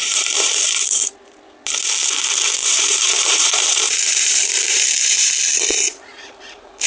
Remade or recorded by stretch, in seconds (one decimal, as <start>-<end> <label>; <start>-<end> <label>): 0.0-1.0 remade; 1.0-2.6 recorded; 2.6-5.3 remade; 5.3-6.1 recorded; 6.1-6.9 remade